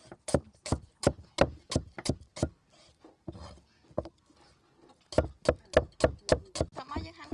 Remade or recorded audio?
recorded